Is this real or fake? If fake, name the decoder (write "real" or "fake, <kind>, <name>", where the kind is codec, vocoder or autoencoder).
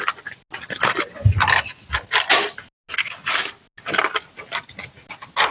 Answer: real